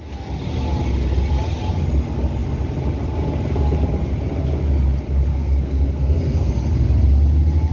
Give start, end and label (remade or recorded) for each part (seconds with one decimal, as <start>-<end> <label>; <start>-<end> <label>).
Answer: 0.0-5.3 recorded; 5.3-6.5 remade; 6.5-7.7 recorded